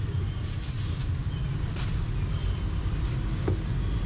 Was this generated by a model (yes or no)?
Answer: no